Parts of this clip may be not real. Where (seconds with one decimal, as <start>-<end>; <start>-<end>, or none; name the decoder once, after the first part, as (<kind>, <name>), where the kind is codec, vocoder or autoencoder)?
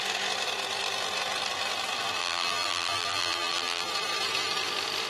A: 2.2-3.9 (vocoder, BigVGAN v2)